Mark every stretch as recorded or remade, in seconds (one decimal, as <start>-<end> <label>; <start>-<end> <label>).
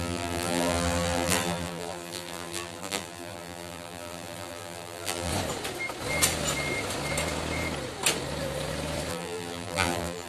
0.0-5.3 remade; 5.3-9.1 recorded; 9.1-10.3 remade